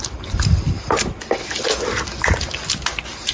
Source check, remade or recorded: recorded